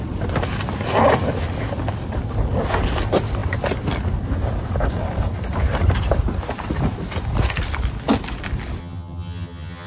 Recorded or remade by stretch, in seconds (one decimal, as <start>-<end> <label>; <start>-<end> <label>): 0.0-8.8 recorded; 8.8-9.9 remade